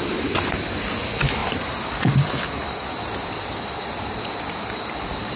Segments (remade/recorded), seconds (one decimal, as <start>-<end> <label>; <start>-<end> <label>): 0.0-1.4 recorded; 1.4-2.4 remade; 2.4-5.4 recorded